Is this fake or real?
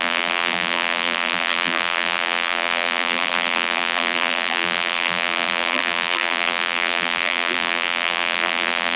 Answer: fake